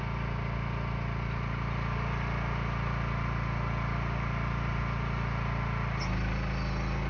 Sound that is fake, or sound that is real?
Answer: real